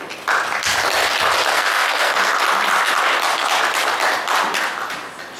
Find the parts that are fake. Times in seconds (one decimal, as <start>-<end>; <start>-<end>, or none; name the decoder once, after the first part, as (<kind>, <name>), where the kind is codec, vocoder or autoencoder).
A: 1.5-2.3 (codec, SNAC)